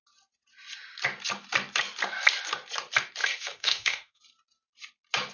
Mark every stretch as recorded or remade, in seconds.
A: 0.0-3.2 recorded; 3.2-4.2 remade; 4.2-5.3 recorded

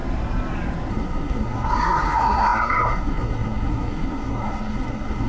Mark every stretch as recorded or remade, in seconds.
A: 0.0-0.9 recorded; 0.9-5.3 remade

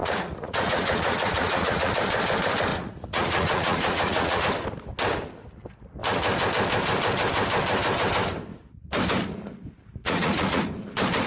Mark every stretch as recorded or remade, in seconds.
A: 0.0-1.9 remade; 1.9-2.7 recorded; 2.7-4.4 remade; 4.4-10.0 recorded; 10.0-10.6 remade; 10.6-11.3 recorded

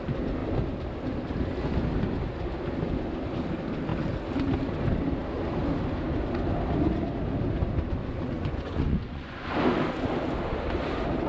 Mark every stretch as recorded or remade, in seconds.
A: 0.0-8.0 recorded; 8.0-9.5 remade; 9.5-11.3 recorded

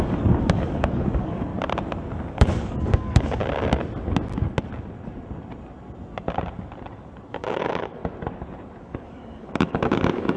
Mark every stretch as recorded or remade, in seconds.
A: 0.0-1.5 remade; 1.5-2.3 recorded; 2.3-3.4 remade; 3.4-7.3 recorded; 7.3-8.0 remade; 8.0-8.8 recorded; 8.8-10.4 remade